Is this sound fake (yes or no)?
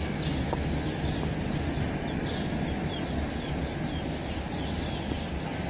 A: no